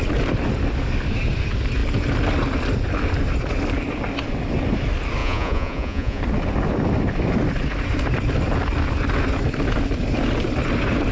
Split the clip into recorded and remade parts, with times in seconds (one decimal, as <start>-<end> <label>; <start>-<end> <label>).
0.0-5.2 recorded; 5.2-6.2 remade; 6.2-11.1 recorded